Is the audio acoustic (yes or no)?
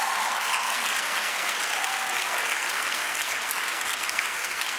no